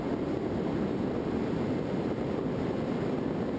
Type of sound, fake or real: fake